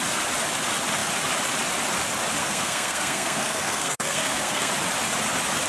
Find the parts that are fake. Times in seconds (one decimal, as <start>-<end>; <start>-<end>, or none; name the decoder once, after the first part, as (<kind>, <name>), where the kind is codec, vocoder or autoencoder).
2.4-4.7 (codec, SNAC)